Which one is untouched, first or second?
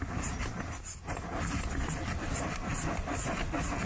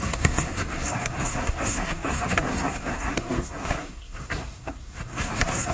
first